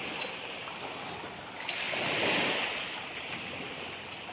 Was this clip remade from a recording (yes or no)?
no